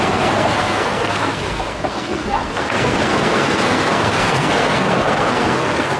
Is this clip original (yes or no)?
no